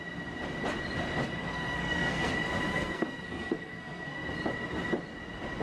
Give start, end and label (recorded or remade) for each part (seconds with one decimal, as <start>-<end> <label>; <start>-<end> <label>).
0.0-1.4 recorded; 1.4-2.3 remade; 2.3-2.7 recorded; 2.7-4.3 remade; 4.3-5.6 recorded